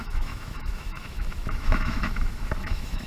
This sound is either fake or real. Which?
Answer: fake